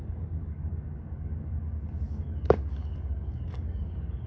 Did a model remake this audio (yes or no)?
yes